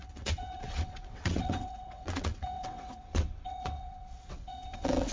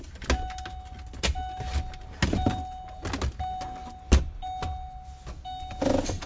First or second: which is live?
second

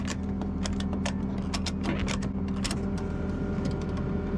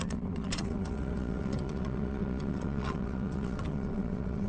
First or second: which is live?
first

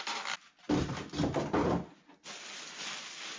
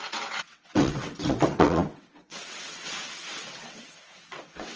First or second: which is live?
first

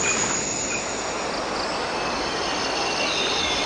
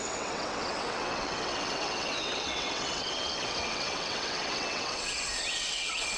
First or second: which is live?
first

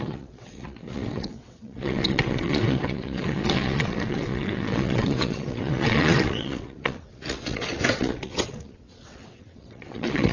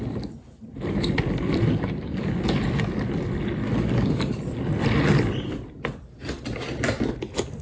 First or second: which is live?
second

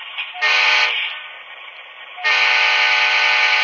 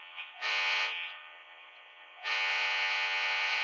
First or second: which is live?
first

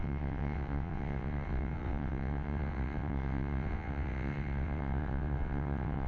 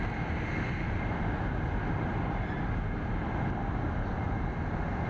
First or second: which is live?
second